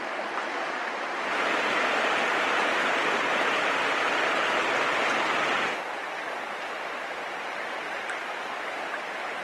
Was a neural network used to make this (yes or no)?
no